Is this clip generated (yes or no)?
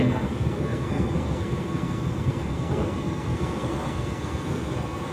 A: yes